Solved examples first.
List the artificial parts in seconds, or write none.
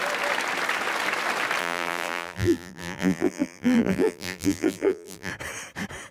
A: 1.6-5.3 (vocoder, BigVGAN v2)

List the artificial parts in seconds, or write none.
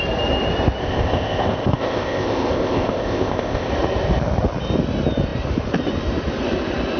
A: 0.8-3.7 (codec, ZipCodec)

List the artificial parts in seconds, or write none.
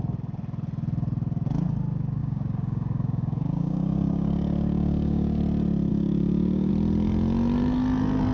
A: 2.2-5.4 (codec, DAC); 5.9-6.7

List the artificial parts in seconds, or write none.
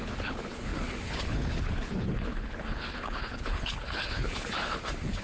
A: 0.0-5.2 (codec, HILCodec)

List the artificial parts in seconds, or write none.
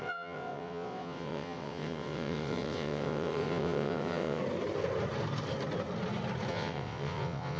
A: 0.0-4.4 (vocoder, WaveNeXt); 6.5-7.6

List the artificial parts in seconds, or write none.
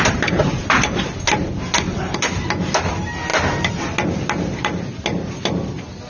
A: none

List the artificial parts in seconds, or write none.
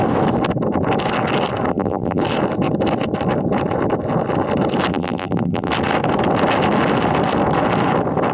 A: 1.7-2.2 (vocoder, BigVGAN v2); 4.9-5.7